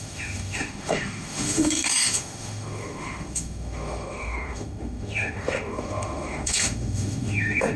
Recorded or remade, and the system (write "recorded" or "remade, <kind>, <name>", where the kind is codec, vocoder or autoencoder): remade, autoencoder, DAC-VAE